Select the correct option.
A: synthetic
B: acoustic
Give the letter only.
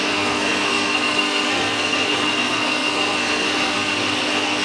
A